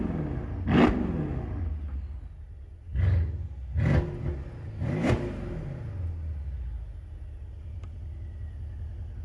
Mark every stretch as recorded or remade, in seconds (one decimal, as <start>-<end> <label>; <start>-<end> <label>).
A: 0.0-9.2 recorded